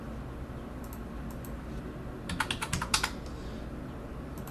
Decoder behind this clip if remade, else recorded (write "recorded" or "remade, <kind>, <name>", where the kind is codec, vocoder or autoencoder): recorded